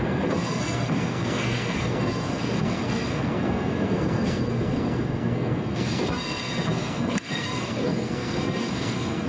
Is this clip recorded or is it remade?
remade